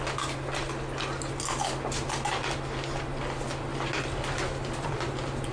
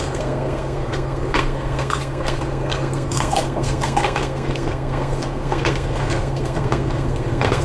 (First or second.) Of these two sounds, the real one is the first